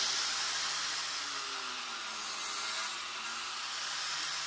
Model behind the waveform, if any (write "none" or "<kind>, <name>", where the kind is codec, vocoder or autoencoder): vocoder, BigVGAN v2